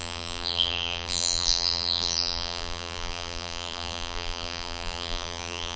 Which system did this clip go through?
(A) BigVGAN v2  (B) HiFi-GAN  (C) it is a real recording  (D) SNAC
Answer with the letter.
A